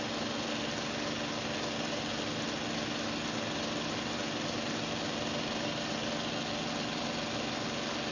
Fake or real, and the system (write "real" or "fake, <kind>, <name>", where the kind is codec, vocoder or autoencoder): real